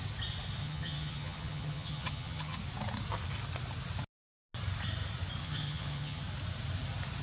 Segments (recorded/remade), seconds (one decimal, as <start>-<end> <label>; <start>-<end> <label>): 0.0-0.6 recorded; 0.6-2.6 remade; 2.6-5.4 recorded; 5.4-6.2 remade; 6.2-7.2 recorded